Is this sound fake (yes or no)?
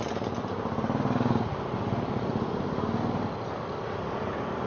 no